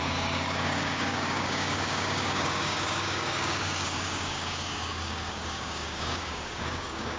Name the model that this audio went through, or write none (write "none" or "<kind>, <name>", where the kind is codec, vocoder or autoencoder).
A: codec, DAC